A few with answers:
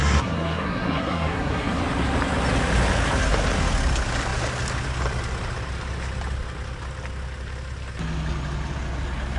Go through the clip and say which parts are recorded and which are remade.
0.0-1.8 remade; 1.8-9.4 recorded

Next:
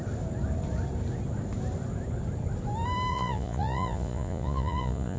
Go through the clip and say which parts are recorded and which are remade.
0.0-3.1 recorded; 3.1-5.2 remade

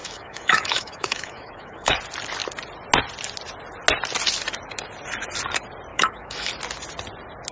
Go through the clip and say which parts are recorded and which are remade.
0.0-2.0 remade; 2.0-5.9 recorded; 5.9-6.5 remade; 6.5-7.5 recorded

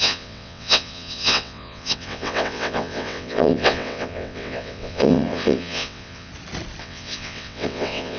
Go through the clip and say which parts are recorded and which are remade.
0.0-6.3 remade; 6.3-6.8 recorded; 6.8-8.2 remade

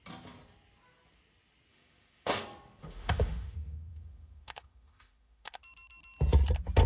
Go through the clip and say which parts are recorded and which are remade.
0.0-1.7 recorded; 1.7-2.3 remade; 2.3-2.8 recorded; 2.8-5.6 remade; 5.6-6.9 recorded